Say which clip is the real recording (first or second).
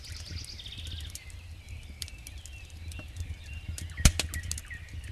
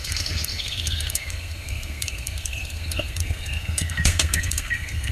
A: first